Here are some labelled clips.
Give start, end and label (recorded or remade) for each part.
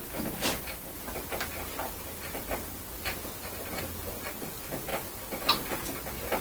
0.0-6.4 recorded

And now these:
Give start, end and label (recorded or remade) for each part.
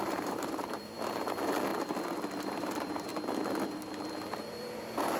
0.0-1.7 remade; 1.7-2.4 recorded; 2.4-3.1 remade; 3.1-3.7 recorded; 3.7-5.2 remade